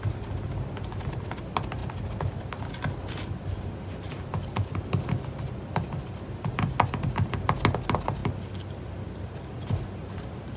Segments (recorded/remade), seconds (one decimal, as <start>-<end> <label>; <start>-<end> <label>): 0.0-10.6 recorded